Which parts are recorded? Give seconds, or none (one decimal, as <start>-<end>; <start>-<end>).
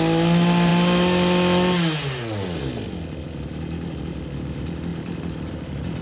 0.0-6.0